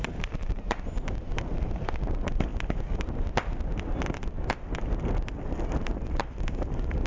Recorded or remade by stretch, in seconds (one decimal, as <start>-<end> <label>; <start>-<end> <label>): 0.0-2.5 remade; 2.5-5.7 recorded; 5.7-7.1 remade